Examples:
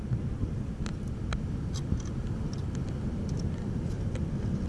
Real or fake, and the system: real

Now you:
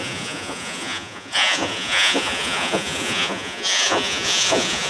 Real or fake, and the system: fake, vocoder, Vocos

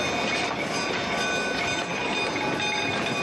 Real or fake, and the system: real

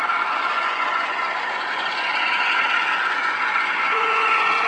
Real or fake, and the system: fake, vocoder, Vocos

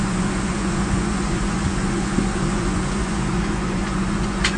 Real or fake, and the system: fake, vocoder, Vocos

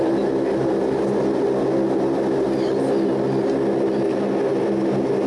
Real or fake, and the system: real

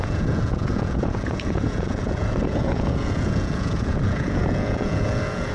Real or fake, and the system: fake, vocoder, Vocos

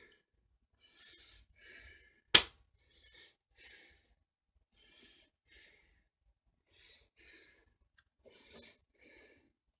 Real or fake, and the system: real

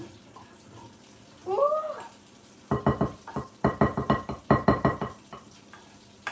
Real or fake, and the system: real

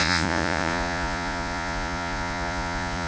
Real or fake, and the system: fake, vocoder, Vocos